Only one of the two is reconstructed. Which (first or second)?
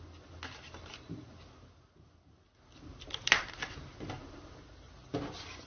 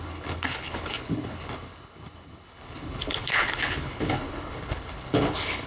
second